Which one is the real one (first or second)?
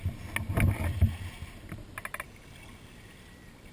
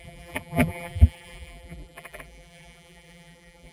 first